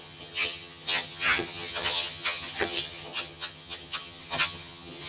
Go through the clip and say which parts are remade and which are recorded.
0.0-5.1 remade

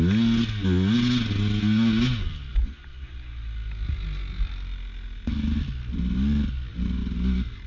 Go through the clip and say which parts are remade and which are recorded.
0.0-7.7 recorded

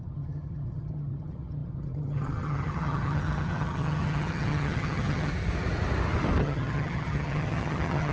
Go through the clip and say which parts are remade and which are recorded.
0.0-5.3 remade; 5.3-6.4 recorded; 6.4-8.1 remade

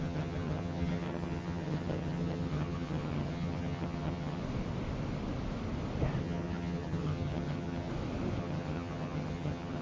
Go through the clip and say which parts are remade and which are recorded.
0.0-4.4 remade; 4.4-6.2 recorded; 6.2-7.9 remade; 7.9-8.4 recorded; 8.4-9.8 remade

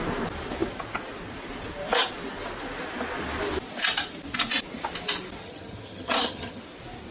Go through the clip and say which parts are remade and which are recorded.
0.0-5.4 recorded; 5.4-6.6 remade; 6.6-7.1 recorded

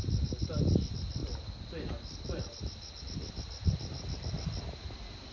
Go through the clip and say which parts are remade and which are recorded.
0.0-5.3 recorded

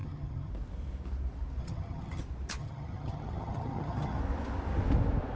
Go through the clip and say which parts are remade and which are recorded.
0.0-0.5 remade; 0.5-1.6 recorded; 1.6-2.2 remade; 2.2-2.6 recorded; 2.6-4.2 remade; 4.2-5.4 recorded